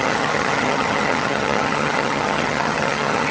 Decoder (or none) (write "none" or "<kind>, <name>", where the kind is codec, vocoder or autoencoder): vocoder, HiFi-GAN